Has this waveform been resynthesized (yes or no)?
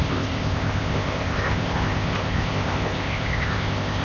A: yes